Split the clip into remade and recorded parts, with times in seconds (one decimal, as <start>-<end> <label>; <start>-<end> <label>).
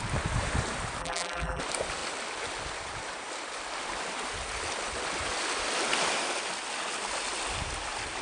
0.0-1.0 recorded; 1.0-1.6 remade; 1.6-8.2 recorded